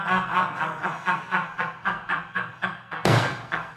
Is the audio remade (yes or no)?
yes